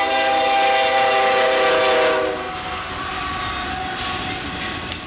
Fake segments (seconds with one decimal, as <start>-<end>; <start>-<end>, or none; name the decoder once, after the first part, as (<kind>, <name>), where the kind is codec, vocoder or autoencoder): 2.4-3.0 (codec, SNAC)

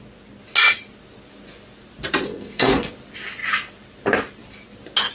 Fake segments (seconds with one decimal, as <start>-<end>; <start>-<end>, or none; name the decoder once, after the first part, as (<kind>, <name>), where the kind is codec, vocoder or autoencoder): 2.3-2.9 (codec, SNAC)

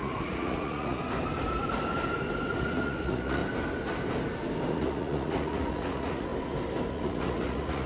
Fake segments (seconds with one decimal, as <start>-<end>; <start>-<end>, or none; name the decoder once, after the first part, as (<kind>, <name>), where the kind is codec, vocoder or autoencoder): 0.0-1.0 (vocoder, Vocos); 2.5-3.4; 4.7-6.3; 6.9-7.9

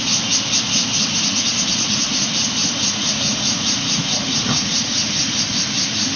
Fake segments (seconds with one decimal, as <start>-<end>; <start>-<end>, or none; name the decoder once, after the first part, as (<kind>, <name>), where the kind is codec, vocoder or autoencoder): 1.7-2.2 (vocoder, Vocos); 2.6-5.4

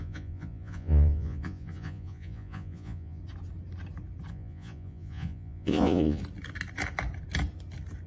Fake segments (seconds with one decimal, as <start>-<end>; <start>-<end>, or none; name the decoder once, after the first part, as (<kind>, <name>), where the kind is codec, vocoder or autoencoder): 0.0-3.2 (vocoder, Vocos); 4.3-6.2

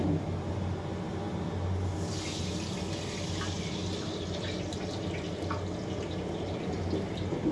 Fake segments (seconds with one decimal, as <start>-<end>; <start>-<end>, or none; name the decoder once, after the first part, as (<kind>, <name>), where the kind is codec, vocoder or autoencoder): none

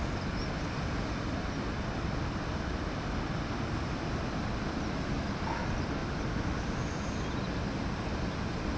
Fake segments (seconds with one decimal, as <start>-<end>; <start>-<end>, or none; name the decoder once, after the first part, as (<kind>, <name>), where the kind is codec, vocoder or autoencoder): none